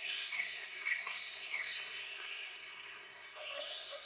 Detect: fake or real fake